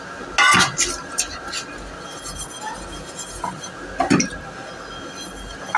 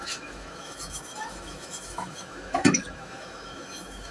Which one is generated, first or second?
second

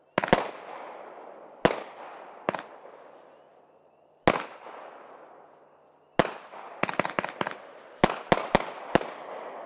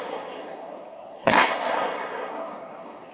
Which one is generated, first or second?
second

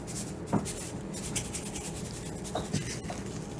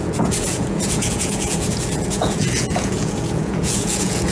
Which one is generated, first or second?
second